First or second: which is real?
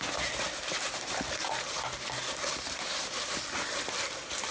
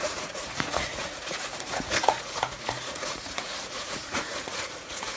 first